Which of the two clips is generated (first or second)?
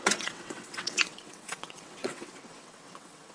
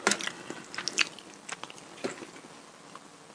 first